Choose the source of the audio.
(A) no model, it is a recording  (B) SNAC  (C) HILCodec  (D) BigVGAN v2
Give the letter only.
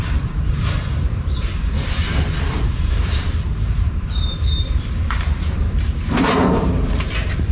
D